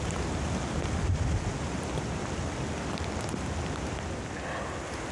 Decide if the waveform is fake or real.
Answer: real